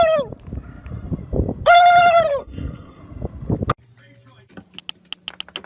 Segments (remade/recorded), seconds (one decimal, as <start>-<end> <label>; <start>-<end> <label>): 0.0-2.4 recorded; 2.4-3.0 remade; 3.0-5.7 recorded